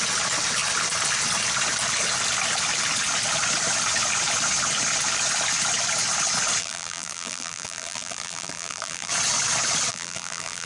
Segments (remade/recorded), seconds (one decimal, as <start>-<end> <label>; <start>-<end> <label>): 0.0-6.6 recorded; 6.6-9.1 remade; 9.1-9.9 recorded; 9.9-10.7 remade